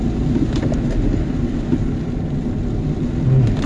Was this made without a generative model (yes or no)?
yes